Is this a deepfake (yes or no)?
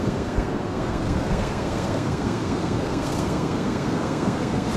yes